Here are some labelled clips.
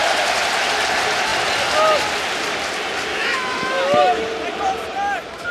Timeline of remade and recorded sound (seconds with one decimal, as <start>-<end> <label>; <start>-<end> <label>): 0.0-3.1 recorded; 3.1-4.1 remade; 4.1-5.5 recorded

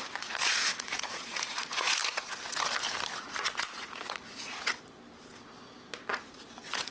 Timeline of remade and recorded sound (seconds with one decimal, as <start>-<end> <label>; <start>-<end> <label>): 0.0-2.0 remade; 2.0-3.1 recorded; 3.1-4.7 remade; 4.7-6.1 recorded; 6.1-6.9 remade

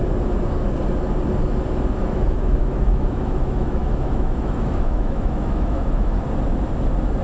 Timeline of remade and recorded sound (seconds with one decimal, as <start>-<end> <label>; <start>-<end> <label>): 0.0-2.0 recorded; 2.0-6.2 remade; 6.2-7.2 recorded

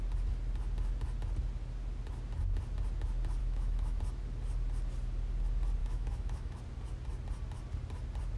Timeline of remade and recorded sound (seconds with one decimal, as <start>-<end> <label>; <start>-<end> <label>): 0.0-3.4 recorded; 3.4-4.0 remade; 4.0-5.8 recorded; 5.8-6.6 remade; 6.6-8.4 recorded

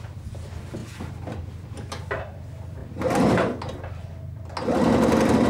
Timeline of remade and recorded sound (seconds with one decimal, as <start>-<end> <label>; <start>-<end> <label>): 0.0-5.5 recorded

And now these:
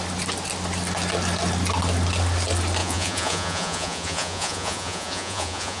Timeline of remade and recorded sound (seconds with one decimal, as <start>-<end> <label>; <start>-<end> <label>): 0.0-2.8 recorded; 2.8-5.8 remade